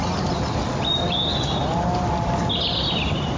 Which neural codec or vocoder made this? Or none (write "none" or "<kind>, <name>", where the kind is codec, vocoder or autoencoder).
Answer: none